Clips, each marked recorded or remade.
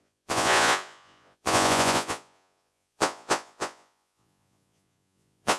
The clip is remade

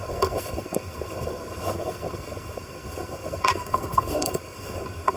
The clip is remade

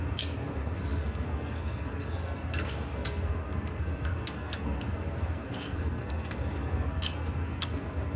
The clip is remade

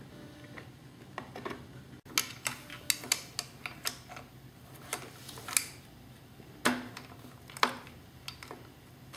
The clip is recorded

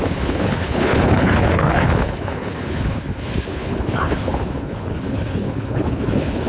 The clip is remade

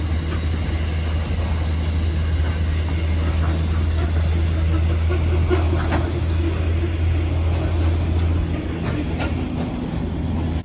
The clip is recorded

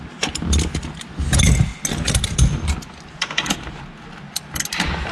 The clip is recorded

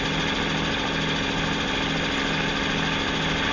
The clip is recorded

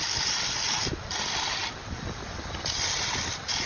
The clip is recorded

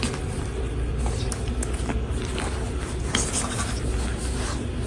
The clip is recorded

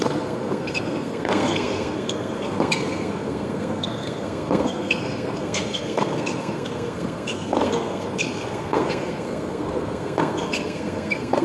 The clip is remade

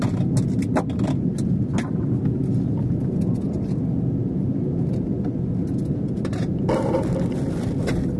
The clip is recorded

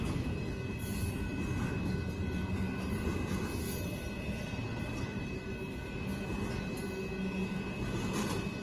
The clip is recorded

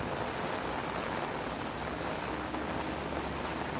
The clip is recorded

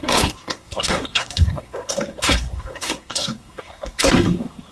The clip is remade